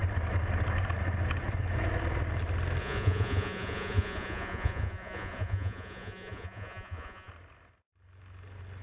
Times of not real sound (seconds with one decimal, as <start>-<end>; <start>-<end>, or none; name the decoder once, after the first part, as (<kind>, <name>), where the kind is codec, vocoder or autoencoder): 2.8-7.3 (vocoder, Vocos)